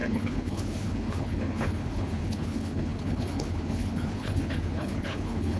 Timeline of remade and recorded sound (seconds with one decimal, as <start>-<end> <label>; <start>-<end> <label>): 0.0-5.6 remade